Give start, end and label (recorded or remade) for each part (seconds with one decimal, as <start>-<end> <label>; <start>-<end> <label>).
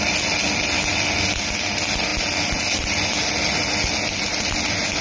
0.0-5.0 recorded